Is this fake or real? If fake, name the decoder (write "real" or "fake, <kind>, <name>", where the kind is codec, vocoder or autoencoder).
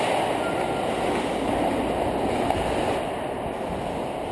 real